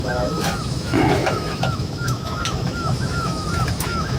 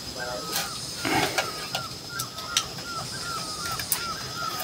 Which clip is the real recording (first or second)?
second